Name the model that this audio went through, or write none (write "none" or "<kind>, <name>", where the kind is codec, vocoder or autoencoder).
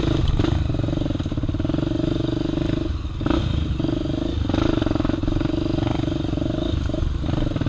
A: none